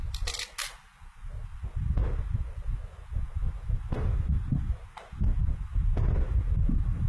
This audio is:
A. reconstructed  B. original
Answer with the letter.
B